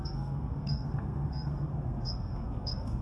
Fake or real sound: fake